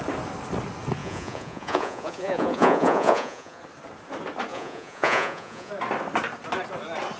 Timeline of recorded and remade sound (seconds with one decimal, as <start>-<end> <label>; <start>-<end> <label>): 0.0-1.0 recorded; 1.0-3.6 remade; 3.6-4.5 recorded; 4.5-5.7 remade; 5.7-7.2 recorded